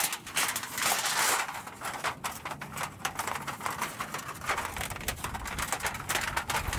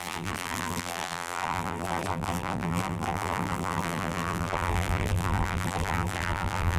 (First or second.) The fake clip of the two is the second